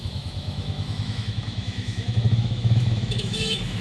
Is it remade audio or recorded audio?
remade